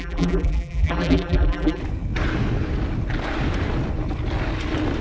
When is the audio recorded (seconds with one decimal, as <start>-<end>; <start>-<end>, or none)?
1.8-5.0